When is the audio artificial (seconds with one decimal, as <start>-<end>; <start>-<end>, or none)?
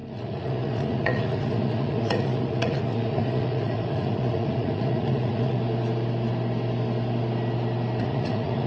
0.0-5.6; 8.0-8.7